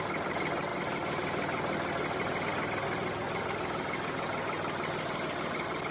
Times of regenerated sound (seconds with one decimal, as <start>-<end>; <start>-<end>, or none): none